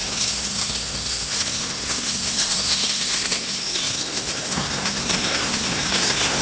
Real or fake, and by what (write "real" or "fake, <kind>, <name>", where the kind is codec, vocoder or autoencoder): fake, codec, SNAC